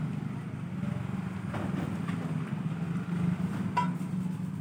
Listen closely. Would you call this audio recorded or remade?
recorded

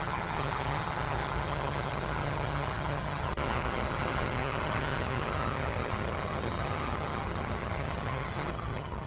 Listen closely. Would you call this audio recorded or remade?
remade